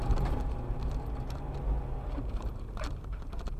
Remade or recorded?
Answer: remade